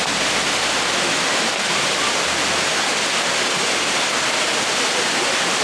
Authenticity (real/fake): real